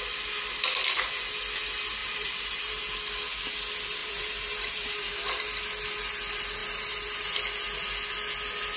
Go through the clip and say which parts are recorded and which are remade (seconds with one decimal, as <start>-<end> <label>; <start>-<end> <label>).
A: 0.0-2.0 recorded; 2.0-2.8 remade; 2.8-4.0 recorded; 4.0-5.1 remade; 5.1-6.6 recorded; 6.6-7.2 remade; 7.2-8.8 recorded